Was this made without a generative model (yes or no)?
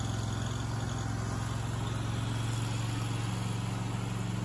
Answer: yes